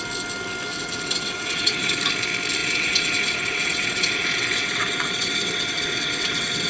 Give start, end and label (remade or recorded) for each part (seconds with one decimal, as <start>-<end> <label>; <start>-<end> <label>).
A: 0.0-0.7 recorded; 0.7-2.0 remade; 2.0-2.6 recorded; 2.6-6.7 remade